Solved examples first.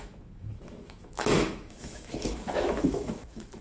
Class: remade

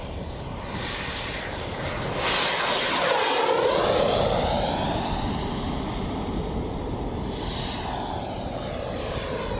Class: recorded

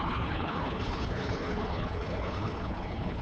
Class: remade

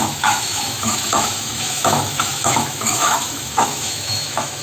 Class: remade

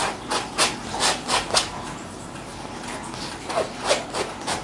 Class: recorded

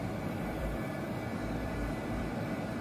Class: remade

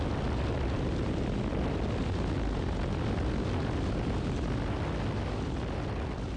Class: recorded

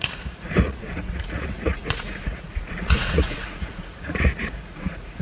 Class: remade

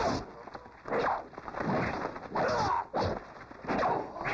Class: recorded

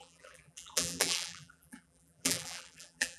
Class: remade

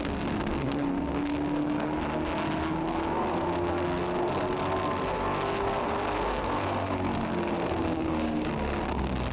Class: remade